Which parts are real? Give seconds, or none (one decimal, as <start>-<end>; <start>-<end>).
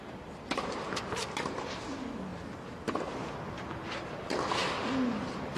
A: 0.0-5.6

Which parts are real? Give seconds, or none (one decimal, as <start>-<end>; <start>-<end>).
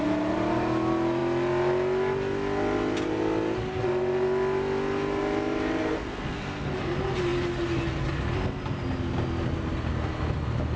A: 0.0-5.8; 6.8-10.8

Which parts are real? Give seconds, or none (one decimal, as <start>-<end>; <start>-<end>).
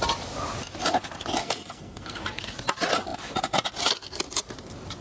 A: 0.0-1.4; 2.2-5.0